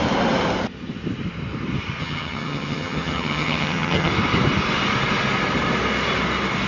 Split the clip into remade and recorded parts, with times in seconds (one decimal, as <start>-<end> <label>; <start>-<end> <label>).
0.0-2.0 recorded; 2.0-4.1 remade; 4.1-6.7 recorded